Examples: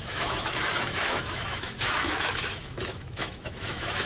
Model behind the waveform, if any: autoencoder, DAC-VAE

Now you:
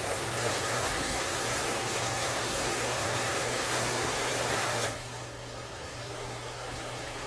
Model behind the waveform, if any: codec, SNAC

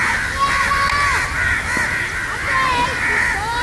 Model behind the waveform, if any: none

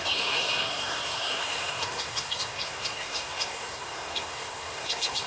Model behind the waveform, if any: codec, SNAC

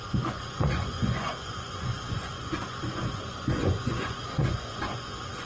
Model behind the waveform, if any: vocoder, Vocos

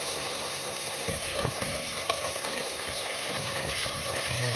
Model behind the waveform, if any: codec, SNAC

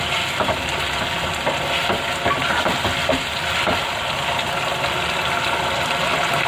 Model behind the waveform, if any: none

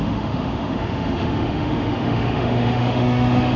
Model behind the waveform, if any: autoencoder, DAC-VAE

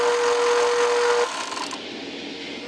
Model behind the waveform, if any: none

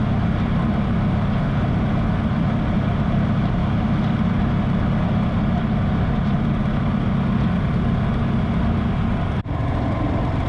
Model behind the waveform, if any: none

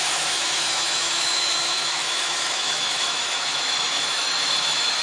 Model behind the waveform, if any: autoencoder, DAC-VAE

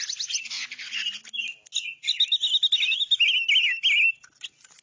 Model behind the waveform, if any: none